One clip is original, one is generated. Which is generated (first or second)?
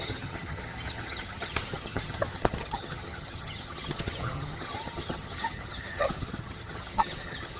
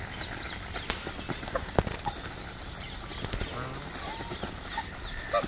first